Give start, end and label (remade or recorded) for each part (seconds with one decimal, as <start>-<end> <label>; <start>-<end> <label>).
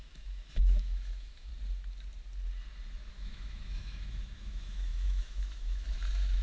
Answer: 0.0-1.5 remade; 1.5-3.1 recorded; 3.1-6.4 remade